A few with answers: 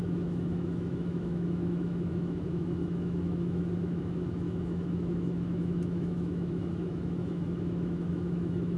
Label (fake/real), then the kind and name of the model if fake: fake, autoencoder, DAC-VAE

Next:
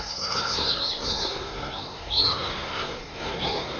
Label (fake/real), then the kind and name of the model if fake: fake, codec, SNAC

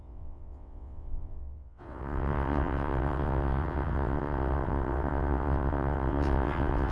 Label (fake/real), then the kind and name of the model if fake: fake, vocoder, WaveNeXt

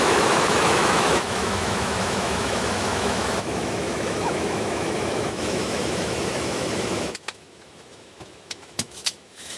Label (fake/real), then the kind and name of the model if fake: fake, autoencoder, DAC-VAE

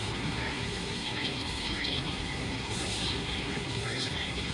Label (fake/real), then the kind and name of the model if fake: fake, codec, SNAC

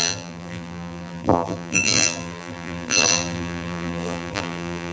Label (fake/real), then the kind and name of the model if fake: fake, vocoder, BigVGAN v2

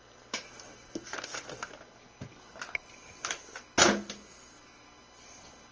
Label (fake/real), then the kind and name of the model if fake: real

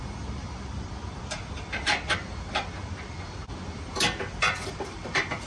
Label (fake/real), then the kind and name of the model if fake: fake, vocoder, BigVGAN v2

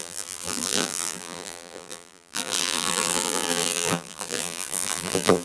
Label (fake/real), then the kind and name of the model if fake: fake, vocoder, BigVGAN v2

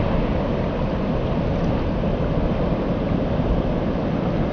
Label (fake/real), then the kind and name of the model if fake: real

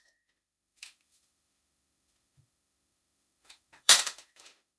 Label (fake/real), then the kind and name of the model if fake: fake, autoencoder, DAC-VAE